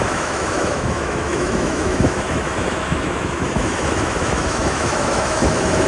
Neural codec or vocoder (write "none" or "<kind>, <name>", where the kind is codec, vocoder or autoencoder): autoencoder, DAC-VAE